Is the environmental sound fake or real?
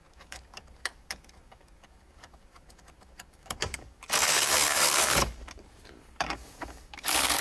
fake